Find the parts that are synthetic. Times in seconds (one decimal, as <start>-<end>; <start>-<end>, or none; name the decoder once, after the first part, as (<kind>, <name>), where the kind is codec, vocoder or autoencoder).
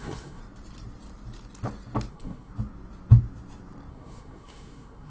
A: 0.0-0.4 (codec, SNAC); 2.1-2.5; 3.9-5.1